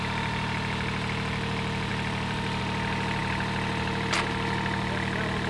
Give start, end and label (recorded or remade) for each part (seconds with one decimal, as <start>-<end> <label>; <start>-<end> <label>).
0.0-5.5 recorded